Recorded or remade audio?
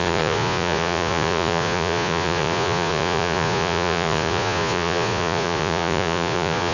remade